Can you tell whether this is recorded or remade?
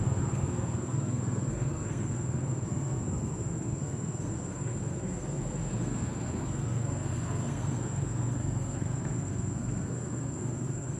remade